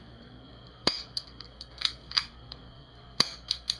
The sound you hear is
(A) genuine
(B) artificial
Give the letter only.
B